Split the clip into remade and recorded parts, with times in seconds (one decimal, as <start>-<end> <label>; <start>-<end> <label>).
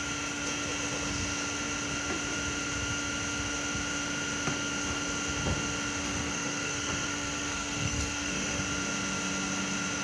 0.0-6.0 recorded; 6.0-8.6 remade; 8.6-10.0 recorded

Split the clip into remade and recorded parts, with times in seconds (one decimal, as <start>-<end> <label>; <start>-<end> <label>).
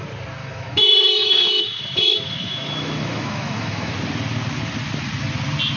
0.0-0.4 recorded; 0.4-3.9 remade; 3.9-5.8 recorded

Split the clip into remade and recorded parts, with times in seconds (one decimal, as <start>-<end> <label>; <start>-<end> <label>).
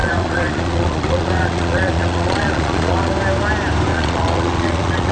0.0-3.1 remade; 3.1-3.9 recorded; 3.9-5.1 remade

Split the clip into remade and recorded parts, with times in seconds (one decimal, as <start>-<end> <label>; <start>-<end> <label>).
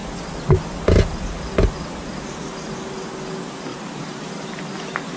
0.0-3.7 recorded; 3.7-4.2 remade; 4.2-5.2 recorded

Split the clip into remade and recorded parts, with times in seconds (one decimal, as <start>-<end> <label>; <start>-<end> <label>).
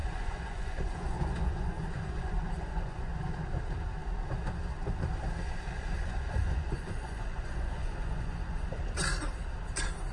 0.0-3.3 remade; 3.3-6.0 recorded; 6.0-8.8 remade; 8.8-10.1 recorded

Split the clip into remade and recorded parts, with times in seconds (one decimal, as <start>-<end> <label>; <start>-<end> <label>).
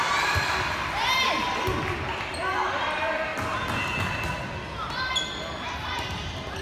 0.0-6.6 recorded